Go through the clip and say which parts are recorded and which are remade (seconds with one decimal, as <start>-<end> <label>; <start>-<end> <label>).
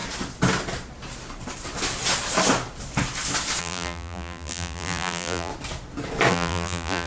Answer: 0.0-3.6 recorded; 3.6-5.5 remade; 5.5-6.3 recorded; 6.3-7.1 remade